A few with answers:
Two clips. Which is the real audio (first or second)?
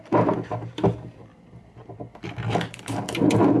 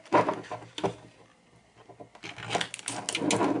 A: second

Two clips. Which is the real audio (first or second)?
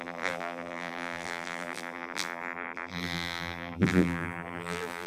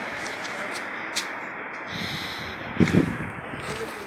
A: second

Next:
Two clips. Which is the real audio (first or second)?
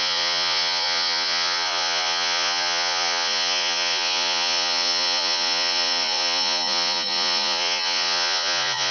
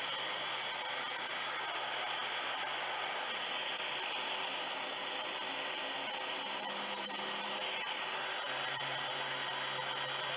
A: second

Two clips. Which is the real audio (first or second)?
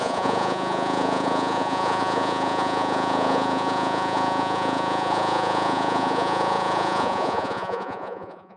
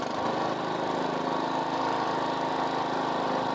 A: second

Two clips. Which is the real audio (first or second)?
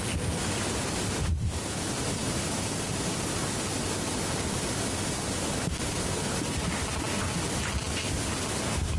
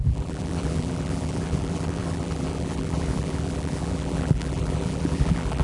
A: first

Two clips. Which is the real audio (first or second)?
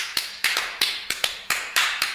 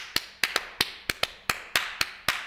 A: second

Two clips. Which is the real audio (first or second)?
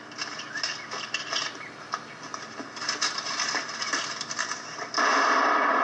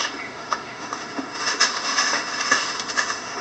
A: first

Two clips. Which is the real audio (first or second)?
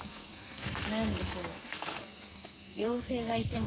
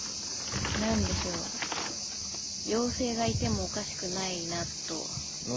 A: second